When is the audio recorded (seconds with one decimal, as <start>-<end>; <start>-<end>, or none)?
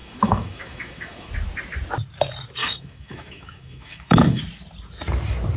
1.3-2.6; 4.4-5.6